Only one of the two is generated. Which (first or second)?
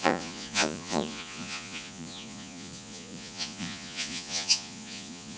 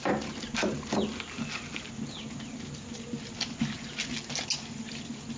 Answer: first